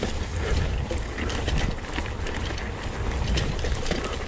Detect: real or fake real